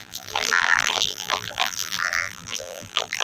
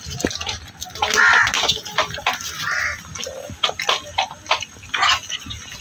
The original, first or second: second